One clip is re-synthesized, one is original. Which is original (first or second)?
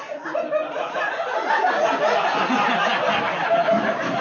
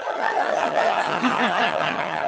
first